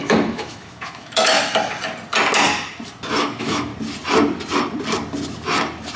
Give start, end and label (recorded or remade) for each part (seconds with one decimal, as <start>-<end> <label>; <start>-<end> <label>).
0.0-1.3 remade; 1.3-3.2 recorded; 3.2-3.7 remade; 3.7-6.0 recorded